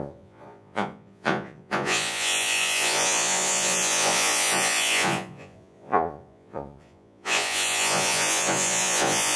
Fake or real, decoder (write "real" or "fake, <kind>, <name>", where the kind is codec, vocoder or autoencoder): fake, vocoder, Vocos